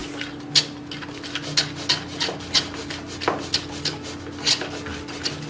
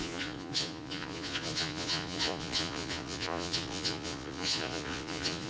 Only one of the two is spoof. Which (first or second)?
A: second